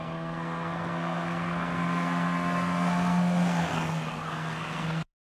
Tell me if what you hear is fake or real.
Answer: fake